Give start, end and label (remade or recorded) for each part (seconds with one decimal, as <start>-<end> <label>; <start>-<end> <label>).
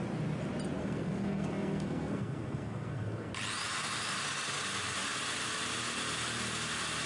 0.0-0.8 recorded; 0.8-3.3 remade; 3.3-7.1 recorded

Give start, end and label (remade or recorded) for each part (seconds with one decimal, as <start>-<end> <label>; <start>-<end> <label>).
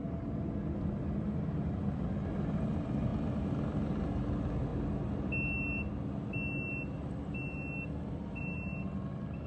0.0-9.5 recorded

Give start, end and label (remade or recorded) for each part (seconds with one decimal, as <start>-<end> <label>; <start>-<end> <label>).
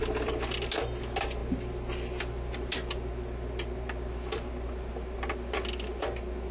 0.0-6.5 recorded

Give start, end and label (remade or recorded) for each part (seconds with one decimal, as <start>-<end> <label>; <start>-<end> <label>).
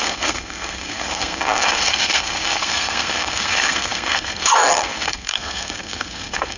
0.0-6.6 remade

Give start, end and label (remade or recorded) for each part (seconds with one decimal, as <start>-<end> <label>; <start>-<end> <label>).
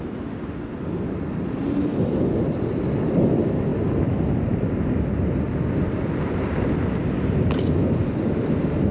0.0-8.9 recorded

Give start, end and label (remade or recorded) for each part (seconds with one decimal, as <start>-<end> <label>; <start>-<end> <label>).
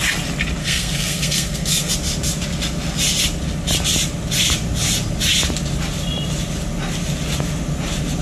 0.0-0.6 recorded; 0.6-1.9 remade; 1.9-8.2 recorded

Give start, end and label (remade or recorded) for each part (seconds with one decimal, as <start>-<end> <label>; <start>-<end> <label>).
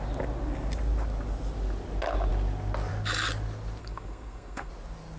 0.0-3.8 recorded; 3.8-4.7 remade; 4.7-5.2 recorded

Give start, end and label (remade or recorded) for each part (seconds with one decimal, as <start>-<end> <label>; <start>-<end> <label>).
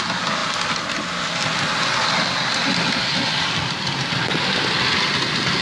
0.0-5.6 recorded